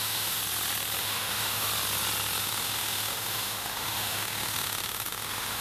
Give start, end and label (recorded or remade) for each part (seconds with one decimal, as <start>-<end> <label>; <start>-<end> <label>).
0.0-0.4 remade; 0.4-1.0 recorded; 1.0-1.7 remade; 1.7-2.4 recorded; 2.4-5.6 remade

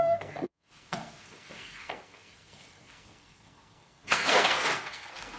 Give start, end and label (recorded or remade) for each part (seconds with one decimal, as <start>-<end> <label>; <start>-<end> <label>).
0.0-5.4 remade

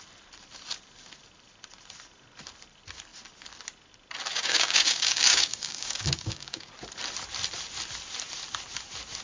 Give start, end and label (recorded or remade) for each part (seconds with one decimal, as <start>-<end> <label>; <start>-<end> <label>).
0.0-4.3 recorded; 4.3-6.7 remade; 6.7-9.2 recorded

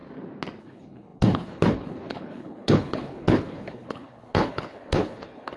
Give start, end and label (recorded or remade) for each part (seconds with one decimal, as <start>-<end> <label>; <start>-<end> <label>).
0.0-0.6 recorded; 0.6-5.6 remade

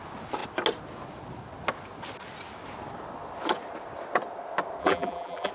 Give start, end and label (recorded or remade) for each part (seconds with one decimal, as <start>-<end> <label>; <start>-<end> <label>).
0.0-4.8 recorded; 4.8-5.5 remade

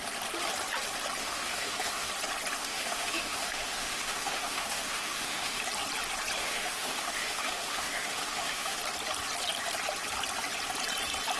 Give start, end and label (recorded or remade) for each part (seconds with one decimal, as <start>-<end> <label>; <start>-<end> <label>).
0.0-1.2 recorded; 1.2-2.1 remade; 2.1-2.6 recorded; 2.6-5.6 remade; 5.6-6.4 recorded; 6.4-8.8 remade; 8.8-11.4 recorded

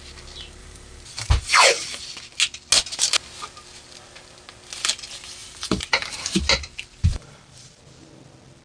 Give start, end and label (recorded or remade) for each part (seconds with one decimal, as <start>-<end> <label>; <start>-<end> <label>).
0.0-0.6 recorded; 0.6-2.0 remade; 2.0-5.4 recorded; 5.4-6.4 remade; 6.4-7.0 recorded; 7.0-7.8 remade; 7.8-8.6 recorded